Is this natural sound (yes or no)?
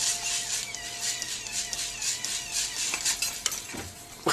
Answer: yes